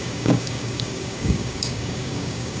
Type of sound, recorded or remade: remade